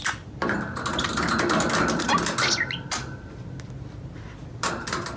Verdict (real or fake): real